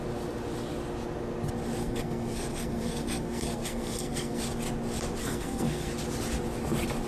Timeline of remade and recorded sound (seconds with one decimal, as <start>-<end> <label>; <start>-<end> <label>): 0.0-1.8 recorded; 1.8-4.4 remade; 4.4-5.2 recorded; 5.2-5.9 remade; 5.9-7.1 recorded